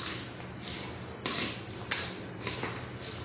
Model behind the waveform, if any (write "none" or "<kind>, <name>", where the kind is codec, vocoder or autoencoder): none